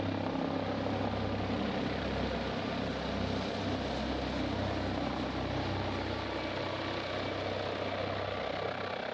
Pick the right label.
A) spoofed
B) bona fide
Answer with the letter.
B